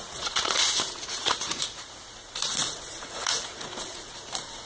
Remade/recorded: remade